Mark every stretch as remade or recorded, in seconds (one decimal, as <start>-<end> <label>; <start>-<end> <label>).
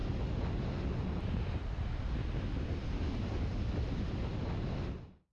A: 0.0-2.6 recorded; 2.6-4.3 remade; 4.3-5.3 recorded